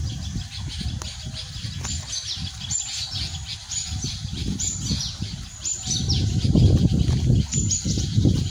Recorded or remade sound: recorded